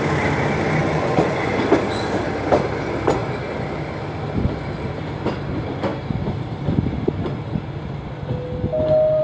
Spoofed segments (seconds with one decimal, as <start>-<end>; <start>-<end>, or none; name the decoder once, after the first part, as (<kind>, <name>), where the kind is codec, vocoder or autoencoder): 0.8-1.5 (vocoder, Vocos)